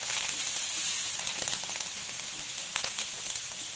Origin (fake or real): real